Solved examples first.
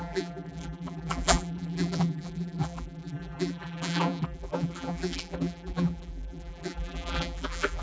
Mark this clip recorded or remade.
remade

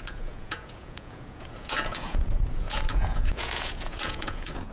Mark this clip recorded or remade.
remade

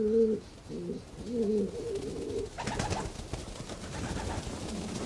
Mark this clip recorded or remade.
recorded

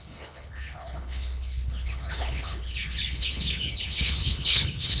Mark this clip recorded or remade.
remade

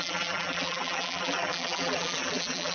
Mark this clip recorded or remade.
remade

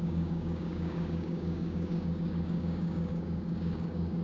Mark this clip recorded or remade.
remade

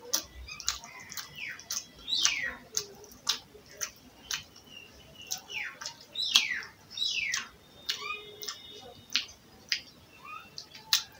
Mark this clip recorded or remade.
recorded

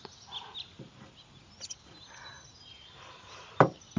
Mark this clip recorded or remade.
recorded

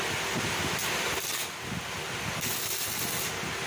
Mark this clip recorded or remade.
recorded